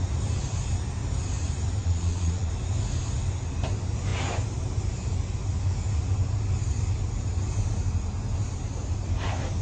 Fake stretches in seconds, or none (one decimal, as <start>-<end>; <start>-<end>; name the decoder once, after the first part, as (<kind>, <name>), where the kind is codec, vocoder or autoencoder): 1.8-2.5 (vocoder, Vocos)